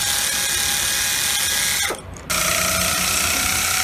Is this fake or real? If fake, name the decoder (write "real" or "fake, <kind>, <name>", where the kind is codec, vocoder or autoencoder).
real